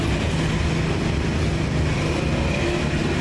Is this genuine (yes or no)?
yes